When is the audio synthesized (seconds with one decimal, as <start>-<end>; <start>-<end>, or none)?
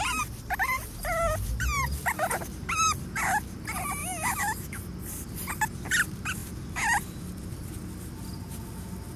4.0-4.8